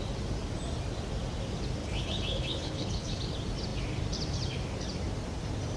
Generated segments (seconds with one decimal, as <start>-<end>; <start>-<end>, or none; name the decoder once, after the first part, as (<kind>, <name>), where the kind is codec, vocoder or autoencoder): 1.8-3.2 (codec, HILCodec)